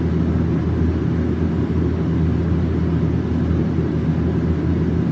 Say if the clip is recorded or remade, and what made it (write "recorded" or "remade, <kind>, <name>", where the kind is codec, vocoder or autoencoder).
recorded